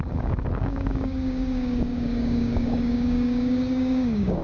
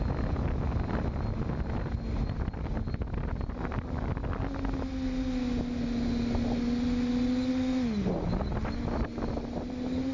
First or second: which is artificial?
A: first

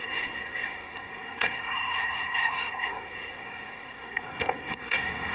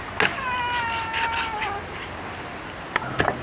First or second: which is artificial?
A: first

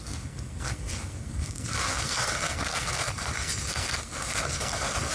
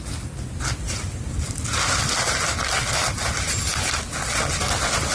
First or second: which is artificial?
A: first